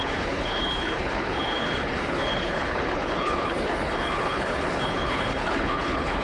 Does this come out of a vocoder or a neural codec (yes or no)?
yes